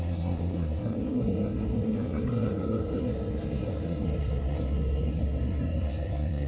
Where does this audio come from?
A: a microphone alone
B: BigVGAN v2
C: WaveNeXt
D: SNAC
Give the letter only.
D